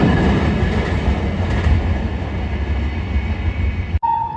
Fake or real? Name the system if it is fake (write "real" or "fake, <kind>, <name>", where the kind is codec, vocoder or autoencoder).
real